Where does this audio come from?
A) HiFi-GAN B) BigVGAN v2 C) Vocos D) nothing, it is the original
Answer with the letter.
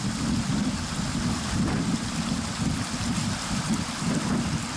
D